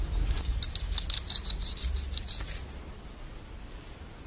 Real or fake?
real